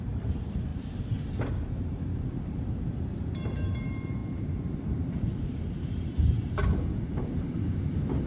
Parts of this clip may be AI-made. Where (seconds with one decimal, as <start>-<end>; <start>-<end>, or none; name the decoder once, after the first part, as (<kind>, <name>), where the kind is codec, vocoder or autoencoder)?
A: 0.0-8.3 (vocoder, BigVGAN v2)

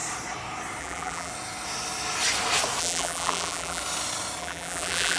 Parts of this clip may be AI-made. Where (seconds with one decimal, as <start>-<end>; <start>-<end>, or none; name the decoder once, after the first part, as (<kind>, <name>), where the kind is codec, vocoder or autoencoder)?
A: 0.8-1.3 (vocoder, BigVGAN v2); 2.8-3.8; 4.4-5.2

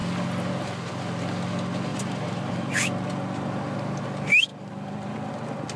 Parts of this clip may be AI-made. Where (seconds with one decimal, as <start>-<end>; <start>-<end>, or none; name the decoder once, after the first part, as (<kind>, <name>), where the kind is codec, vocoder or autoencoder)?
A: 1.9-2.7 (vocoder, BigVGAN v2); 4.5-5.3

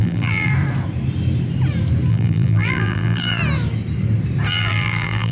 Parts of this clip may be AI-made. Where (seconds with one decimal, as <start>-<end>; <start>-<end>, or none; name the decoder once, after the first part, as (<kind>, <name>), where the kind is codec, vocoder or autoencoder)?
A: 0.0-0.5 (vocoder, BigVGAN v2); 2.1-3.4; 4.5-5.3